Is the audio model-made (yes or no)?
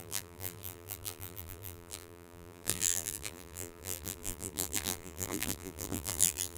yes